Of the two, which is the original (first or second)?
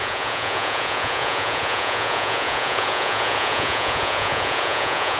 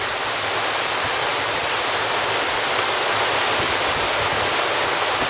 second